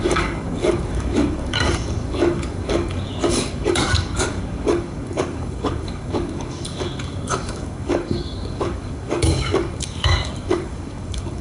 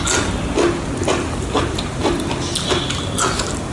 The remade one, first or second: first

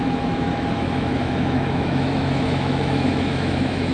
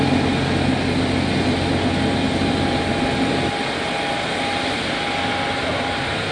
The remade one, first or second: first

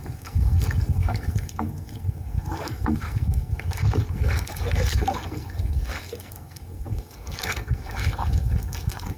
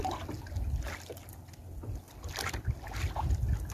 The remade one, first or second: first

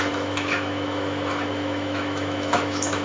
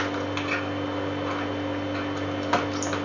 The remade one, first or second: first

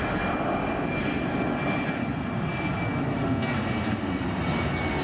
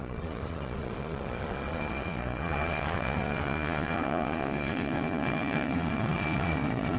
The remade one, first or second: second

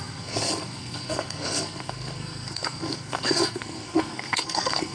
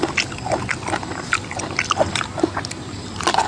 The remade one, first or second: first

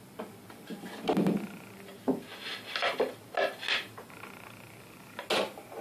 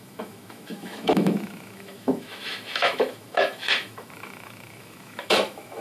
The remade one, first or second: second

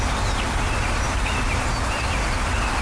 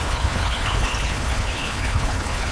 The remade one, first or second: second